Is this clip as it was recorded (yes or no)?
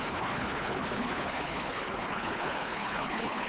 no